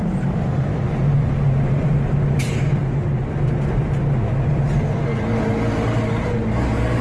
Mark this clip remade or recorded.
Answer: recorded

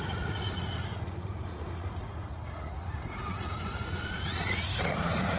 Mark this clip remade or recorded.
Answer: remade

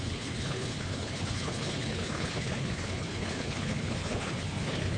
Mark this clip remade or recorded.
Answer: remade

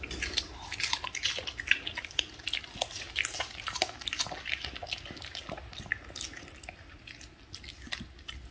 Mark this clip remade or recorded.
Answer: recorded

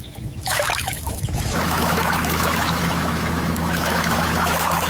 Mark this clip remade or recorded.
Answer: remade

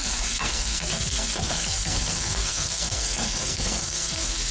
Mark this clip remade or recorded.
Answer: remade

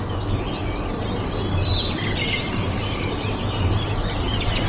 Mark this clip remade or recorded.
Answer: recorded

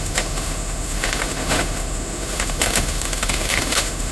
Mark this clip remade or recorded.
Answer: remade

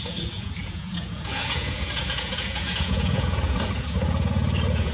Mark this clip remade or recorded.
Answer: remade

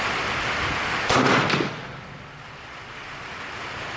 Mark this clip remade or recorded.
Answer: recorded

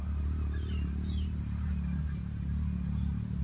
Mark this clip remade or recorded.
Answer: recorded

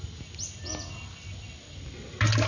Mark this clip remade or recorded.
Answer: recorded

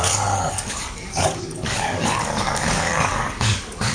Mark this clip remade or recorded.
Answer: remade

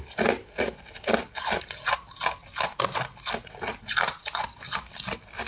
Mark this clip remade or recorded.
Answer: recorded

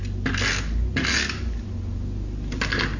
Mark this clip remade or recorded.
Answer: recorded